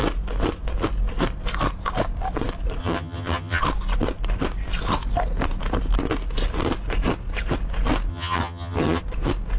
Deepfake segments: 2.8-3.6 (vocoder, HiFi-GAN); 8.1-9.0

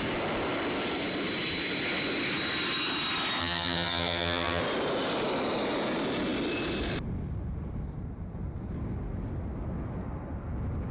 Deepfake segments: 3.4-4.6 (vocoder, HiFi-GAN)

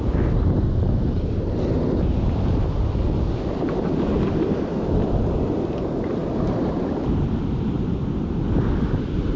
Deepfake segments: none

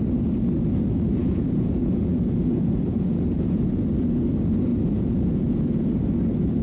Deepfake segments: 1.2-3.7 (vocoder, Vocos); 4.7-6.0